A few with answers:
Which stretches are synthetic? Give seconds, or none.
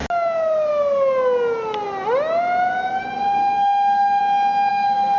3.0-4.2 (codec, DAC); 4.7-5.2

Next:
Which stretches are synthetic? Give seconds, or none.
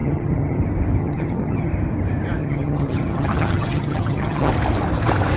0.0-0.6 (vocoder, HiFi-GAN); 1.0-1.7; 2.4-4.5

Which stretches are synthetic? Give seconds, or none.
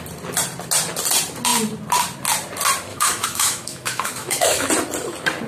2.9-4.7 (autoencoder, DAC-VAE)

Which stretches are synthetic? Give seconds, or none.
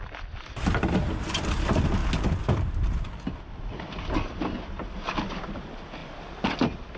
6.0-7.0 (vocoder, BigVGAN v2)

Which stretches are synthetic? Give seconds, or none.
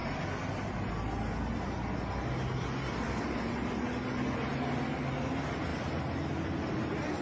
none